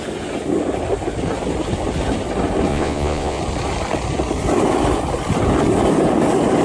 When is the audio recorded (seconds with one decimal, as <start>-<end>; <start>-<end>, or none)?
0.0-2.7; 3.4-6.6